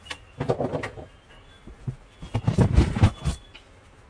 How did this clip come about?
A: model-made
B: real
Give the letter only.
B